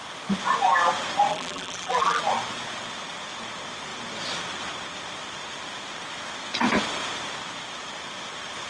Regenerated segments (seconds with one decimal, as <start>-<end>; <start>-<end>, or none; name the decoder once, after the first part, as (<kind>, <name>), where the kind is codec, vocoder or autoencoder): 1.3-2.2 (vocoder, BigVGAN v2)